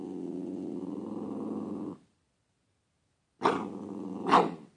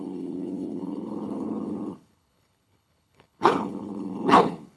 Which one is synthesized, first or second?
second